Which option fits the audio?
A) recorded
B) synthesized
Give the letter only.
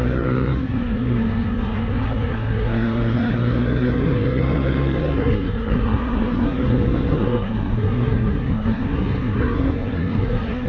B